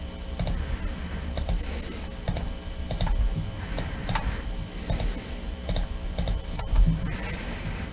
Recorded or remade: recorded